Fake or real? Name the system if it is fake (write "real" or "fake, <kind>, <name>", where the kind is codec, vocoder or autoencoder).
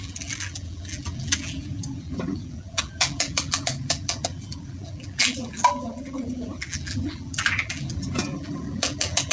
fake, vocoder, BigVGAN v2